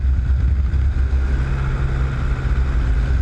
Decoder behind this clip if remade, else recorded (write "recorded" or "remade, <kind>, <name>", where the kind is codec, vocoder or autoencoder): recorded